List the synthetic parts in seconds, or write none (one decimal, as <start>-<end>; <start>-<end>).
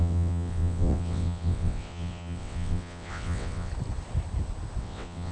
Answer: 0.0-3.7; 4.8-5.3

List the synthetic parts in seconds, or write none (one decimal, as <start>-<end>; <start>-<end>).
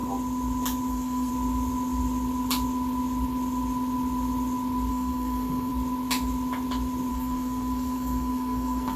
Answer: 0.9-1.3; 4.9-5.7; 7.1-9.0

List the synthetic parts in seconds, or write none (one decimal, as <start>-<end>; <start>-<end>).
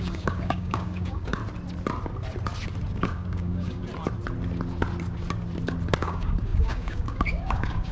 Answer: 0.0-1.4; 2.9-3.8; 6.0-7.9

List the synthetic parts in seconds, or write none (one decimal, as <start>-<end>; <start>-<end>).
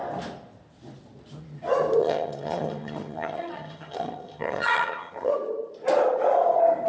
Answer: 2.0-5.3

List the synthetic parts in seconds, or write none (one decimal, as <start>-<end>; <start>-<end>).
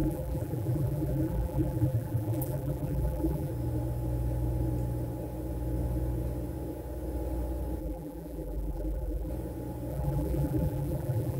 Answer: 0.0-3.5; 7.8-9.3; 9.9-11.4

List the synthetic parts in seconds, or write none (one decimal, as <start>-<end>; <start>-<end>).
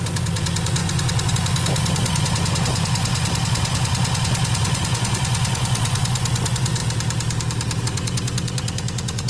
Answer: 0.0-6.8; 7.8-9.3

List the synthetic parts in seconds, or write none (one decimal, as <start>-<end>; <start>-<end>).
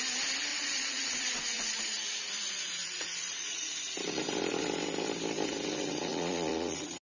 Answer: 0.5-3.7; 6.1-7.0